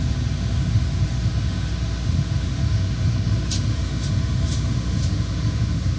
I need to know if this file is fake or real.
fake